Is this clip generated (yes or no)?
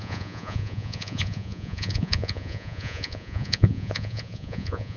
yes